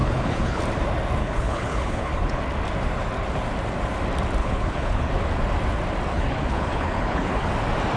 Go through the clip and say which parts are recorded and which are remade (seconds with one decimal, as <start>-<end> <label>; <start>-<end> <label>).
0.0-0.6 remade; 0.6-1.2 recorded; 1.2-2.4 remade; 2.4-4.4 recorded; 4.4-5.1 remade; 5.1-6.1 recorded; 6.1-7.5 remade; 7.5-8.0 recorded